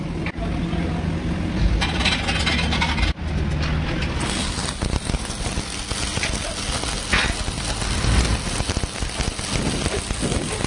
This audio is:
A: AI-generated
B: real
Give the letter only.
B